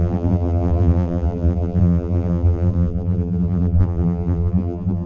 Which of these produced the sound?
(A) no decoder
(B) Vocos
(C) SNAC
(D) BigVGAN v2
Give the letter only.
D